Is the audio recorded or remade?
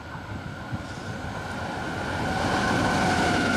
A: recorded